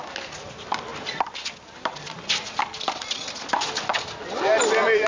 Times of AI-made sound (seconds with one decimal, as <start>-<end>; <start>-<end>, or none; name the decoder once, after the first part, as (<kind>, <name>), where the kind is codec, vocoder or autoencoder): none